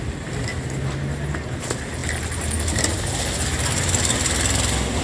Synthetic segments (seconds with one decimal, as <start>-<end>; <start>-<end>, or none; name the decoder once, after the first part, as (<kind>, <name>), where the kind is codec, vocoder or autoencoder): none

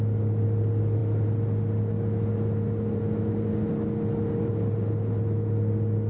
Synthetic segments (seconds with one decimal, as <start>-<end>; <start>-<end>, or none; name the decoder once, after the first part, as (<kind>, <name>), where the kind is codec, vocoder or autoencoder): none

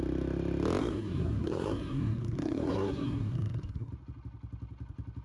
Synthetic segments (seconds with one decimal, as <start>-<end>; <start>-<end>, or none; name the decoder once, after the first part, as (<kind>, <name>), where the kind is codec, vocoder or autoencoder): 0.8-3.9 (codec, SNAC)

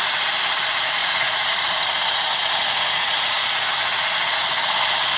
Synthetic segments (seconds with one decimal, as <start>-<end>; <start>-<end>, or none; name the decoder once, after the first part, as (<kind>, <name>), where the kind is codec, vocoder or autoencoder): 1.0-4.1 (vocoder, Vocos)

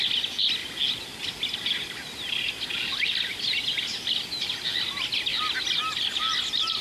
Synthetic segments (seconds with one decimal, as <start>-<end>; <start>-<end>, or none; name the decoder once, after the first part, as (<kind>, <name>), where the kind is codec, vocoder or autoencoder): none

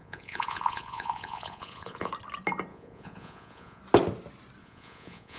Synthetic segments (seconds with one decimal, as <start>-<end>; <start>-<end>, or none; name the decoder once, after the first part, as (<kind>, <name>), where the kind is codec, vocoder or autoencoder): 0.0-2.1 (vocoder, Vocos); 2.7-3.8; 4.6-5.4

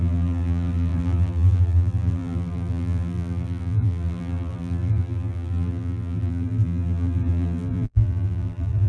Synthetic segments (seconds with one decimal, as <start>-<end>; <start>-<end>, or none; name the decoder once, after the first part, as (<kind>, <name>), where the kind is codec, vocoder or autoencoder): 0.0-8.9 (vocoder, BigVGAN v2)

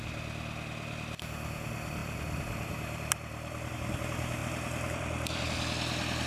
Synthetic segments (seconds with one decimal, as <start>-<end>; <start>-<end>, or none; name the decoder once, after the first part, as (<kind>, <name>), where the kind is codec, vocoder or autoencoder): 2.0-3.7 (vocoder, BigVGAN v2); 4.4-5.4